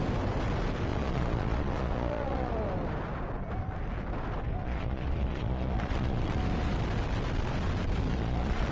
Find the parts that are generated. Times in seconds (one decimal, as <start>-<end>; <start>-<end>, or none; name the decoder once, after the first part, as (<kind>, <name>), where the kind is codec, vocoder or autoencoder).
0.9-2.5 (vocoder, Vocos); 4.6-6.4; 8.1-8.7